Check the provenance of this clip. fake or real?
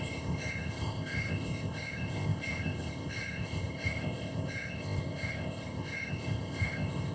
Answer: fake